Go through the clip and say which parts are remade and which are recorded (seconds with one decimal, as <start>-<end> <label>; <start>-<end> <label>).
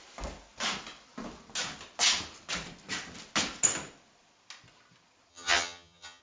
0.0-5.3 recorded; 5.3-6.2 remade